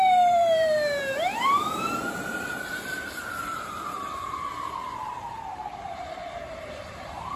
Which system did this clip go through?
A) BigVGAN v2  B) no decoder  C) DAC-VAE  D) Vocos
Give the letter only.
A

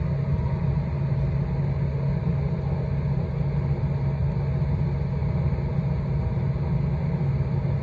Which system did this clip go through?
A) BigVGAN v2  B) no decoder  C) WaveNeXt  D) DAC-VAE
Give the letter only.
B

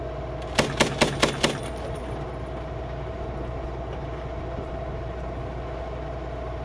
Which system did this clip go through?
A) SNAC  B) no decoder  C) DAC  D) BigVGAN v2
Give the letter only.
B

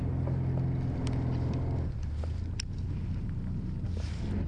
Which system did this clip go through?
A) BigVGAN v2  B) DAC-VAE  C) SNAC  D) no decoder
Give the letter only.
D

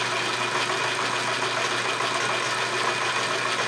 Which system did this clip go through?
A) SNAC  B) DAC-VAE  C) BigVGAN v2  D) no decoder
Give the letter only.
D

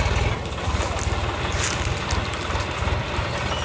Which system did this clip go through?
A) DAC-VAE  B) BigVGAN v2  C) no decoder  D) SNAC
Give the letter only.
C